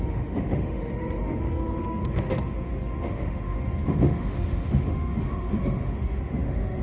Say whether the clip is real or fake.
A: fake